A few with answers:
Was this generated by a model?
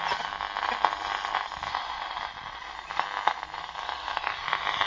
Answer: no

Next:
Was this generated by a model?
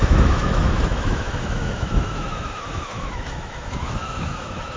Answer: yes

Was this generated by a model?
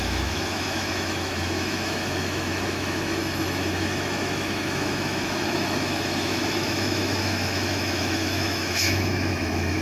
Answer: yes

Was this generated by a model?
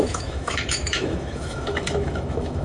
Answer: yes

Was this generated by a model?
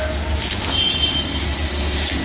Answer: no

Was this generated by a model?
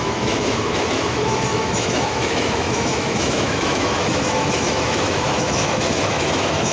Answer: yes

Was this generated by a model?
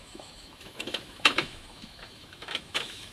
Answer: yes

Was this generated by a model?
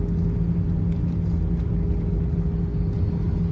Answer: no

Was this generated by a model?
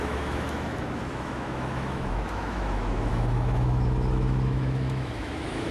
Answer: yes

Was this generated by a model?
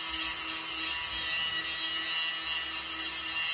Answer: no